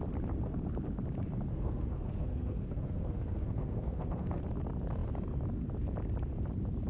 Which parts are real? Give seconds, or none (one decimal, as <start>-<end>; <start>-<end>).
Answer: 0.0-1.5; 4.4-6.9